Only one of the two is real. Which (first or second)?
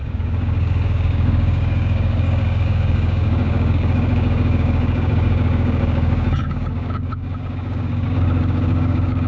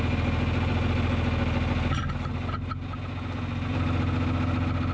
second